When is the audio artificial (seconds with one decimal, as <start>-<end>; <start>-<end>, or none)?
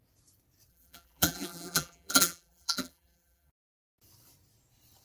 0.7-3.7